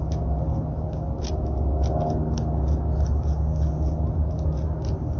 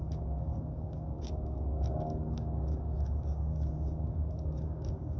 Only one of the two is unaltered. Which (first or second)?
first